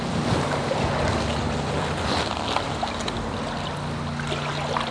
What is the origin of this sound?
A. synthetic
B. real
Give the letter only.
B